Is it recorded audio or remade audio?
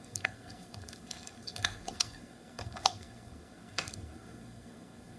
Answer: remade